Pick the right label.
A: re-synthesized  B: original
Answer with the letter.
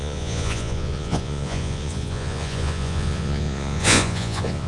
A